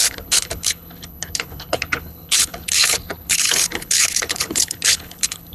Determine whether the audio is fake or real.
fake